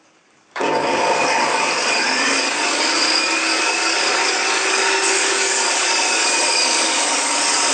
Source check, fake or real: fake